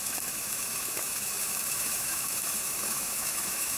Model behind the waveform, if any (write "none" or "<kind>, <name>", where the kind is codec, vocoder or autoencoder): autoencoder, DAC-VAE